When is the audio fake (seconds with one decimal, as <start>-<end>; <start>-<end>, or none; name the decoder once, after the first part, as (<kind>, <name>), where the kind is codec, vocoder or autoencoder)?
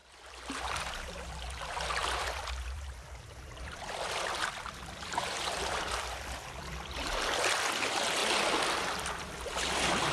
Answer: 0.0-1.1 (vocoder, BigVGAN v2); 2.0-6.6